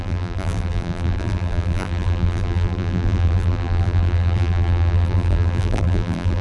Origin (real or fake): fake